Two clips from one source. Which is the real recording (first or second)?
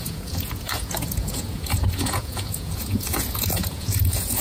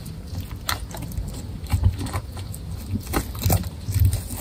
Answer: second